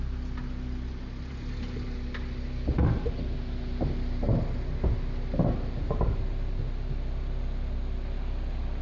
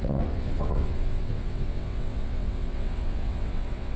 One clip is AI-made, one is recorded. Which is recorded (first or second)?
first